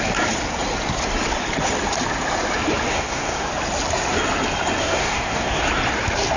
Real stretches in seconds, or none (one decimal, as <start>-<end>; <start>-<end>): 0.0-2.9; 3.5-4.8; 5.6-6.4